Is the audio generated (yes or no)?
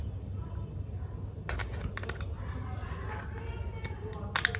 no